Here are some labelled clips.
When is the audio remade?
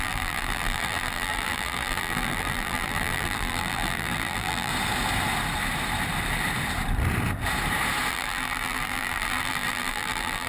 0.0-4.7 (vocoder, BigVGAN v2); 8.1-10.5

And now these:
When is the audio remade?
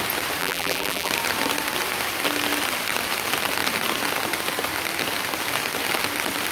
0.4-1.1 (vocoder, BigVGAN v2)